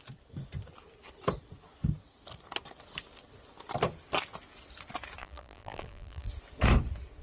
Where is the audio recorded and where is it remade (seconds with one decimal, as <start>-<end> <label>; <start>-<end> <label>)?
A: 0.0-5.2 recorded; 5.2-6.3 remade; 6.3-7.2 recorded